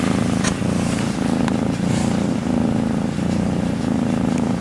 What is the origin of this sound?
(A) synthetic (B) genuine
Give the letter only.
B